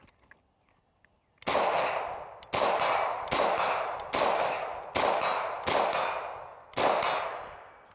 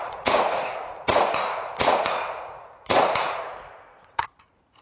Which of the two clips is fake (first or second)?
second